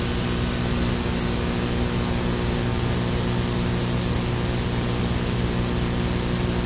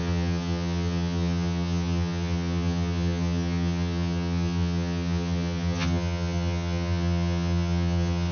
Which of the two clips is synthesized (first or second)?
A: second